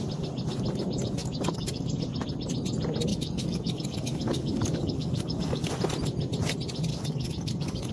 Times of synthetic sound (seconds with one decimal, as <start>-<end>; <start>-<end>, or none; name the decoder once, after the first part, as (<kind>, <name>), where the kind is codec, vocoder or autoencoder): 1.2-1.9 (codec, DAC); 3.1-5.7; 6.9-7.9